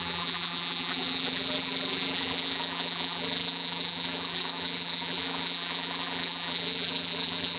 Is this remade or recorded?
remade